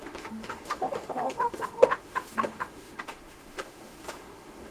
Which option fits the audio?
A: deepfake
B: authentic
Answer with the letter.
A